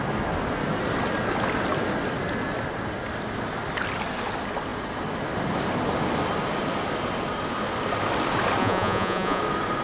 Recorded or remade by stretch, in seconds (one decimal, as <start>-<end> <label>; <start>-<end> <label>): 0.0-8.6 recorded; 8.6-9.4 remade; 9.4-9.8 recorded